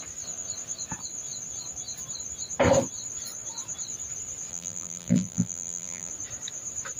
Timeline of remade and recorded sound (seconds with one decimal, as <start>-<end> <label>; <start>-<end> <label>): 0.0-4.5 recorded; 4.5-6.1 remade; 6.1-7.0 recorded